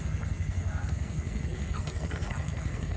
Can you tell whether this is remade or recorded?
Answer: remade